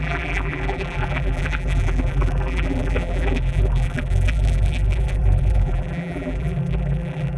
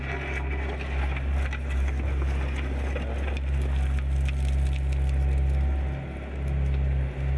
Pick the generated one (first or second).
first